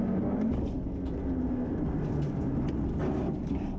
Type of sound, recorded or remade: recorded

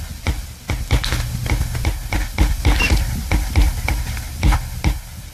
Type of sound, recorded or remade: recorded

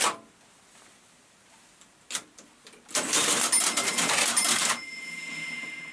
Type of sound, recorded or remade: recorded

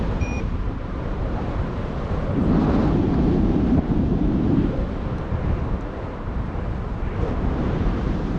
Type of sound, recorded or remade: remade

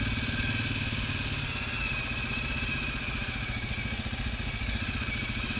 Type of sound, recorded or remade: recorded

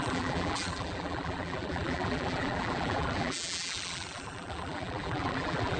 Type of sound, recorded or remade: remade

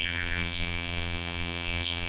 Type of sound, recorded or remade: remade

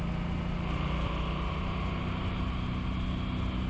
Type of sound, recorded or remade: recorded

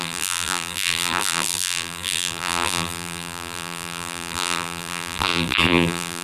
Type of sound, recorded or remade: remade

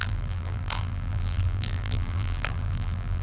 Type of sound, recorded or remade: remade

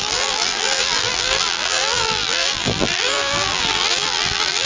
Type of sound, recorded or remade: remade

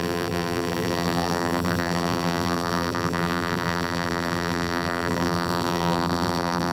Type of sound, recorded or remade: remade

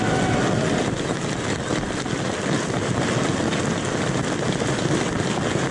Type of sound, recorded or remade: recorded